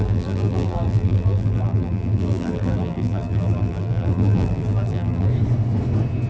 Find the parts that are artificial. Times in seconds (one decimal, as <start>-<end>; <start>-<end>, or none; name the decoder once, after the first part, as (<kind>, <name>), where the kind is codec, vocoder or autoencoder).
0.0-5.3 (vocoder, BigVGAN v2)